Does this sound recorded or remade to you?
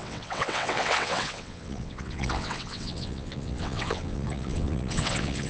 remade